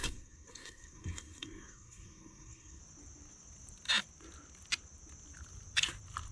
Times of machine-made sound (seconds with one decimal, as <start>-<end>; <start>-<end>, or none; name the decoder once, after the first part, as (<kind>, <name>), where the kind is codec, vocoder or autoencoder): 0.0-2.8 (codec, SNAC)